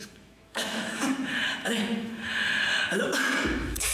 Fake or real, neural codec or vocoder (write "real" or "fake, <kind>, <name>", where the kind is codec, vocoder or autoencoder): fake, autoencoder, DAC-VAE